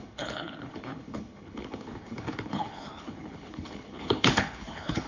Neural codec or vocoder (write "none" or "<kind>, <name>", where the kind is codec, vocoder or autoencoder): codec, HILCodec